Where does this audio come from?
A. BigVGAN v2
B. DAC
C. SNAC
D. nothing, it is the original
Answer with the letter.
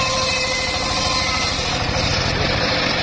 D